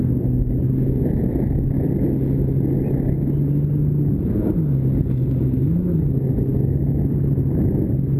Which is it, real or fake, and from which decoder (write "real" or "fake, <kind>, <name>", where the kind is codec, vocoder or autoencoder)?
real